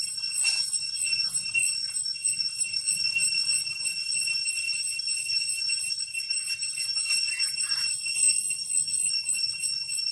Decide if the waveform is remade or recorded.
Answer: recorded